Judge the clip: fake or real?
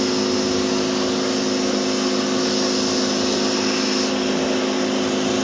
real